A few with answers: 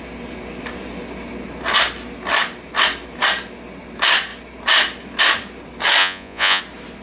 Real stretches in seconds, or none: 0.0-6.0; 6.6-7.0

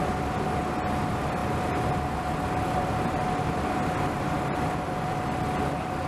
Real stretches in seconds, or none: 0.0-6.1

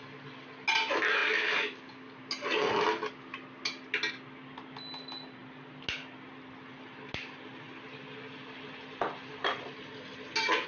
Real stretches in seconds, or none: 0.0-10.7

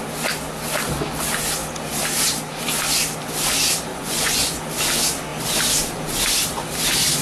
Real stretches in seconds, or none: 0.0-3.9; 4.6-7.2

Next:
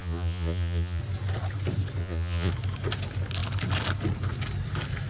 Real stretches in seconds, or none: 1.0-2.0; 2.5-5.1